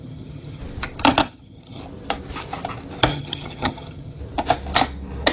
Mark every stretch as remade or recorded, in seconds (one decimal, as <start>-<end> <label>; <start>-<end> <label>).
0.0-0.6 remade; 0.6-1.2 recorded; 1.2-1.8 remade; 1.8-3.1 recorded; 3.1-4.2 remade; 4.2-5.3 recorded